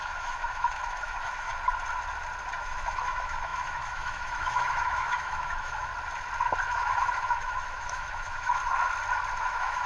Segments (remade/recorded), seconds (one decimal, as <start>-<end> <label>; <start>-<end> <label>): 0.0-1.5 remade; 1.5-2.6 recorded; 2.6-5.9 remade; 5.9-6.6 recorded; 6.6-8.6 remade; 8.6-9.4 recorded; 9.4-9.9 remade